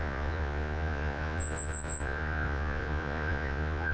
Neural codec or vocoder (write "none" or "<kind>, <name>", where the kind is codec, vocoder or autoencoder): vocoder, Vocos